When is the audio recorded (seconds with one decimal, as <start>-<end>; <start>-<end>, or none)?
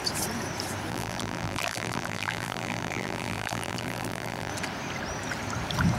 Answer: 0.0-0.9; 4.5-6.0